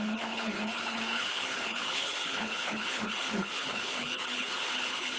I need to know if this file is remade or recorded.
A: remade